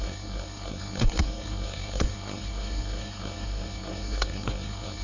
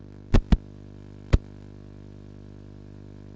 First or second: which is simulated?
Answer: first